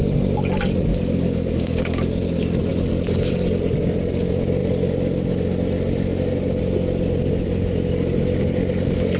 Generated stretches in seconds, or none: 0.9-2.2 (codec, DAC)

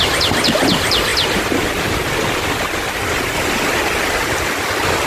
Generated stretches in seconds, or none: none

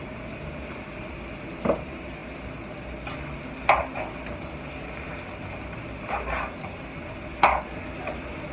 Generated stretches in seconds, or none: none